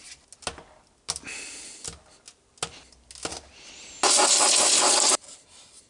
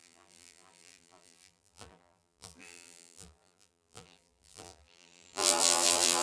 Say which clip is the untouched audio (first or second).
first